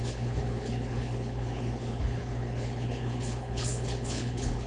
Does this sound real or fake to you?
fake